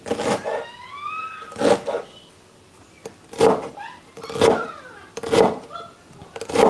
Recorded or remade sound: recorded